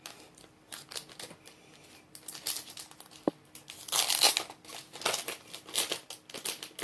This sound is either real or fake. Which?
real